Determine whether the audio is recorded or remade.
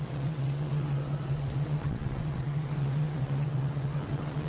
remade